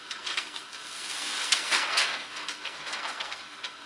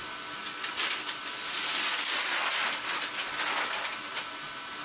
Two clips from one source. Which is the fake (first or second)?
first